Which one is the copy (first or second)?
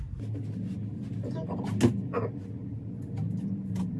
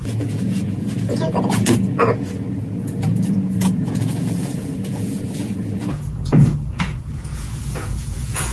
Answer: second